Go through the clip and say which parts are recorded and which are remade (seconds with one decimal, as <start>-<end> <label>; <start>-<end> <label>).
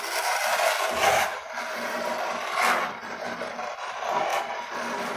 0.0-4.3 remade; 4.3-5.2 recorded